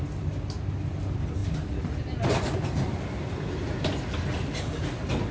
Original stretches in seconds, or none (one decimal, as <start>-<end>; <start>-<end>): 0.0-5.3